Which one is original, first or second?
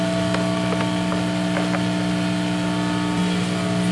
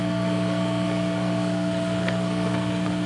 first